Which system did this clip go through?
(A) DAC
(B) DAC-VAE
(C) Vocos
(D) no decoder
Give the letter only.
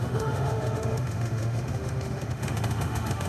B